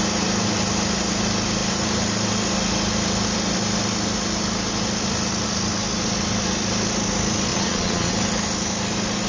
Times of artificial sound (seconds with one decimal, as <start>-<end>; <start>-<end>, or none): 7.5-8.1